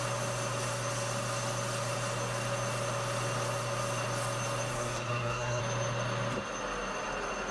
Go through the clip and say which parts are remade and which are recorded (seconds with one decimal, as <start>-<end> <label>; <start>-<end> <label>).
0.0-4.7 recorded; 4.7-5.6 remade; 5.6-7.5 recorded